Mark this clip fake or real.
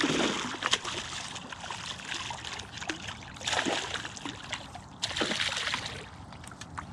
real